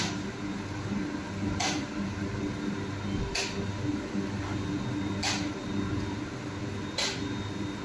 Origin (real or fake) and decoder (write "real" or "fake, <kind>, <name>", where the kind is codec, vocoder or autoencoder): real